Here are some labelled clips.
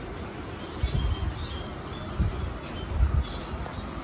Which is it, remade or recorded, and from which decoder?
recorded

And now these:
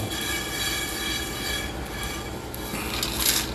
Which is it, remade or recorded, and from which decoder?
recorded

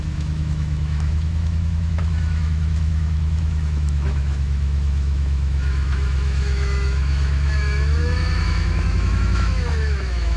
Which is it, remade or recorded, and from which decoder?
remade, autoencoder, DAC-VAE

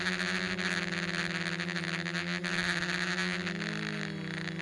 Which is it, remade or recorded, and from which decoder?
recorded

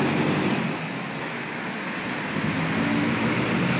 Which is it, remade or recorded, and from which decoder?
recorded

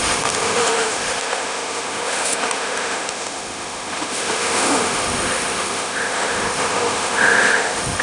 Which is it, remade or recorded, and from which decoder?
remade, autoencoder, DAC-VAE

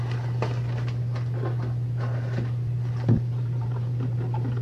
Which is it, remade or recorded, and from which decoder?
recorded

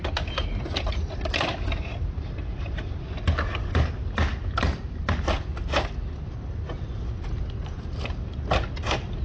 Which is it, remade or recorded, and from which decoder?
recorded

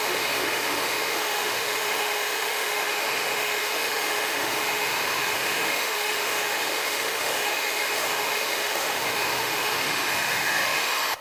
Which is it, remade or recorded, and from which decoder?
remade, autoencoder, DAC-VAE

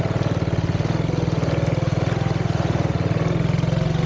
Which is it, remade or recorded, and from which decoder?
recorded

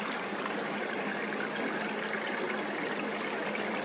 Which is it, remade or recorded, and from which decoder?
recorded